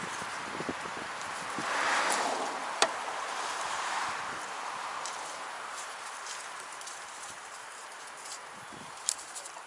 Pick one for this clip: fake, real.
fake